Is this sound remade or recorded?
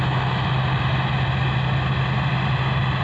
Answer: recorded